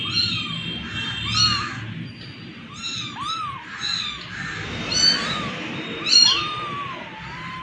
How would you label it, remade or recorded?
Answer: recorded